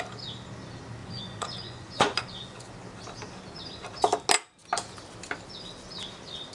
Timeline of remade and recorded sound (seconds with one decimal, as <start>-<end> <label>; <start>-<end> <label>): 0.0-1.0 recorded; 1.0-2.7 remade; 2.7-6.5 recorded

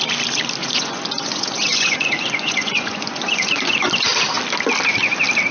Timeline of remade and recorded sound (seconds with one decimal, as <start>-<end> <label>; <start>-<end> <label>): 0.0-0.6 recorded; 0.6-3.9 remade; 3.9-5.5 recorded

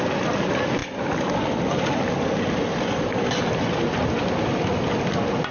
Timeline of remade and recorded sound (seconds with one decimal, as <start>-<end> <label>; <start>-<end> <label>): 0.0-5.5 recorded

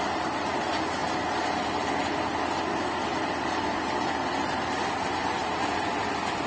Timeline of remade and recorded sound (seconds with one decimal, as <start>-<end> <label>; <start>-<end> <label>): 0.0-6.5 recorded

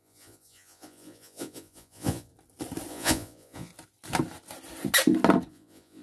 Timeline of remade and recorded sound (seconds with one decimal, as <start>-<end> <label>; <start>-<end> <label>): 0.0-2.3 remade; 2.3-2.9 recorded; 2.9-3.7 remade; 3.7-5.5 recorded; 5.5-6.0 remade